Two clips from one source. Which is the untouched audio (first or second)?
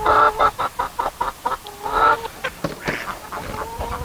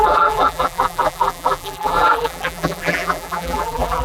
first